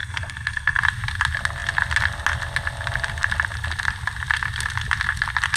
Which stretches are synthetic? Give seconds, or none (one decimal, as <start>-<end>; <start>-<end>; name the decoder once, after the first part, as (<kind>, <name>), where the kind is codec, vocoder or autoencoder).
0.0-0.8 (codec, SNAC)